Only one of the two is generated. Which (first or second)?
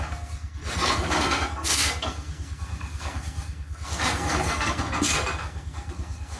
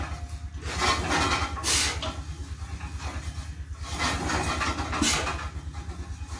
first